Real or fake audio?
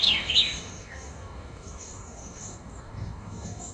fake